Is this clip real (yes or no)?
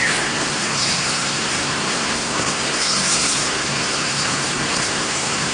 no